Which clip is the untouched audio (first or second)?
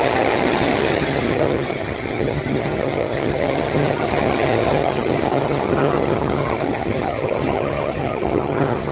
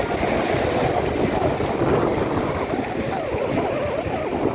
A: second